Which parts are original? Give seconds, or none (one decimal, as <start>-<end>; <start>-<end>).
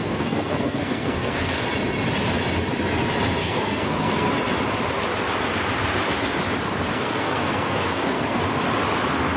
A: 1.6-3.4; 4.3-6.9; 8.4-9.4